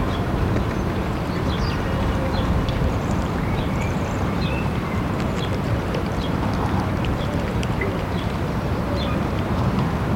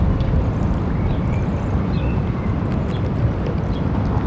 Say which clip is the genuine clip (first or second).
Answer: second